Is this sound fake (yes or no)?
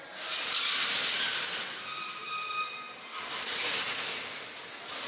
no